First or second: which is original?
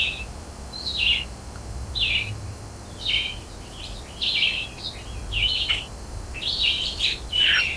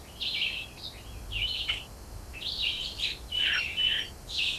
first